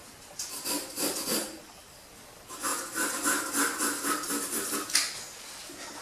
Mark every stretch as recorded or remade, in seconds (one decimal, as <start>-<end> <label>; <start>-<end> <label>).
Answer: 0.0-6.0 recorded